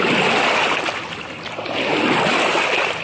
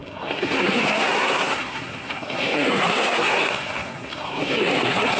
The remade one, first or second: second